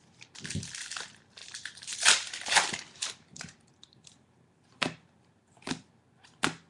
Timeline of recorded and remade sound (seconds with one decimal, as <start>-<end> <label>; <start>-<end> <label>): 0.0-1.4 recorded; 1.4-5.4 remade; 5.4-6.7 recorded

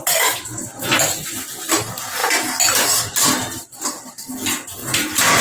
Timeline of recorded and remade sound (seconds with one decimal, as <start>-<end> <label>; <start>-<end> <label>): 0.0-4.8 recorded; 4.8-5.4 remade

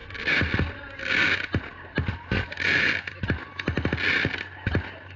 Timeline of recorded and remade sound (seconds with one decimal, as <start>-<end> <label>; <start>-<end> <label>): 0.0-5.2 recorded

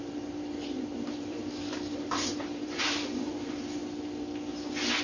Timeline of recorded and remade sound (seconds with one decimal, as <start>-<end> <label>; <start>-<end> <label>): 0.0-3.8 remade; 3.8-5.0 recorded